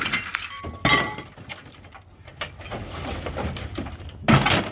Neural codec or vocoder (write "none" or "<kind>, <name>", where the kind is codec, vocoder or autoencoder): none